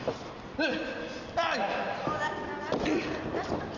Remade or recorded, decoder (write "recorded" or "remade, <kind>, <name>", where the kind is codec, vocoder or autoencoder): recorded